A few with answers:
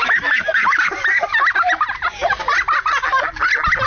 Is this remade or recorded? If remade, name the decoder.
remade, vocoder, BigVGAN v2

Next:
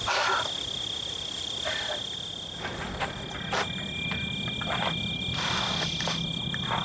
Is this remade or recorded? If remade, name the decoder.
recorded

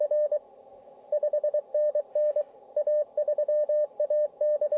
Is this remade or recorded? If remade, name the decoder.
recorded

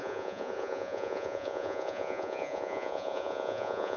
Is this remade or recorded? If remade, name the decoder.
remade, vocoder, Vocos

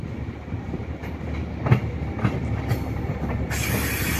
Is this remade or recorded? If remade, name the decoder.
recorded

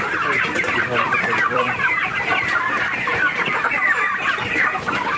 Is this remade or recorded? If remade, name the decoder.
remade, vocoder, BigVGAN v2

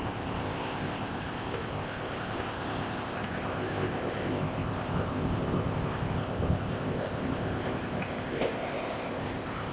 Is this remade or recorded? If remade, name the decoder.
remade, codec, ZipCodec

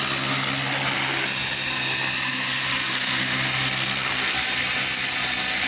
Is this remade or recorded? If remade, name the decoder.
recorded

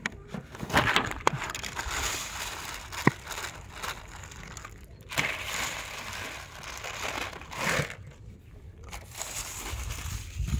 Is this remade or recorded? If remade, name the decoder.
remade, vocoder, BigVGAN v2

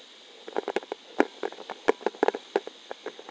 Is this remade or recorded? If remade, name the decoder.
recorded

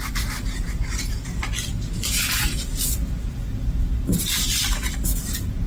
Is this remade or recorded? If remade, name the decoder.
recorded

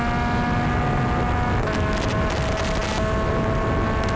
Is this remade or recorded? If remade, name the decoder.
recorded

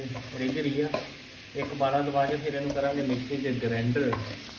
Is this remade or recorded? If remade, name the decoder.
recorded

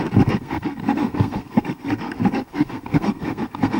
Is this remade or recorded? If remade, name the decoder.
remade, codec, SNAC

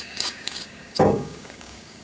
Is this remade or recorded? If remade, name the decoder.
remade, codec, DAC